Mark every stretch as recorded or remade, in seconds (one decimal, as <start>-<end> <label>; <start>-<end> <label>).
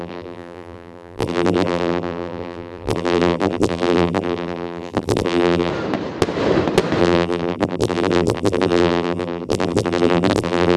0.0-5.7 remade; 5.7-7.0 recorded; 7.0-10.8 remade